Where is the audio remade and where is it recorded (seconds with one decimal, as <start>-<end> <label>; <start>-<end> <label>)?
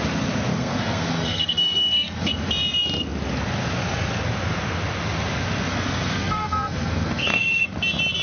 0.0-0.5 recorded; 0.5-2.3 remade; 2.3-5.7 recorded; 5.7-7.7 remade; 7.7-8.2 recorded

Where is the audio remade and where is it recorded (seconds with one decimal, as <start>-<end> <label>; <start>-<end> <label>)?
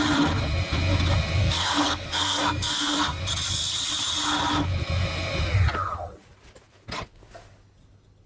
0.0-1.4 recorded; 1.4-3.2 remade; 3.2-8.3 recorded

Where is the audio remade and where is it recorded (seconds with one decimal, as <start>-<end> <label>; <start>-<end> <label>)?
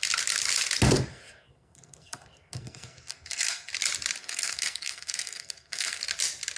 0.0-1.1 recorded; 1.1-3.7 remade; 3.7-4.2 recorded; 4.2-6.0 remade; 6.0-6.6 recorded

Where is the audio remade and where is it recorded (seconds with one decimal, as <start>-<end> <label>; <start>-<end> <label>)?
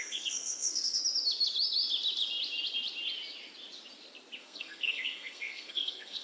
0.0-1.0 remade; 1.0-4.4 recorded; 4.4-6.2 remade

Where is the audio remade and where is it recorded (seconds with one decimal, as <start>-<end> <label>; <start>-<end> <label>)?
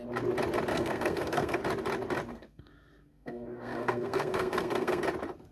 0.0-0.7 recorded; 0.7-1.6 remade; 1.6-2.3 recorded; 2.3-5.0 remade; 5.0-5.5 recorded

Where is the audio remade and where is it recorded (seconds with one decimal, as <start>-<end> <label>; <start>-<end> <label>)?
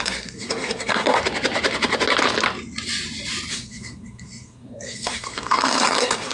0.0-1.2 remade; 1.2-3.5 recorded; 3.5-6.3 remade